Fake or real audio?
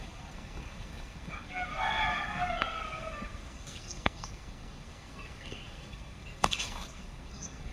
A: fake